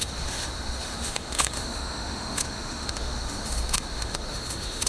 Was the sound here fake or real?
fake